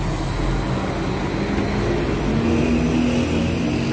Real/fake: real